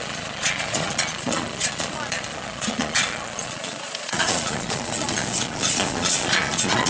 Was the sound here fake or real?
fake